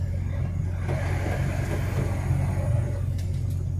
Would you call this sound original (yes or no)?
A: yes